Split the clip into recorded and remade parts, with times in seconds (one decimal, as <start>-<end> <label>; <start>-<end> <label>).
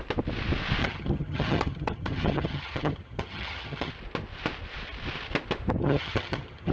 0.0-0.8 recorded; 0.8-3.9 remade; 3.9-5.8 recorded; 5.8-6.7 remade